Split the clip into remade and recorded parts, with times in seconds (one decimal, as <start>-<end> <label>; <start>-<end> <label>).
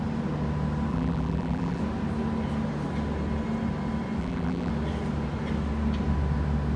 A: 0.0-0.9 recorded; 0.9-1.8 remade; 1.8-4.2 recorded; 4.2-4.7 remade; 4.7-6.8 recorded